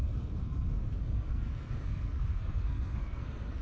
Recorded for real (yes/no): no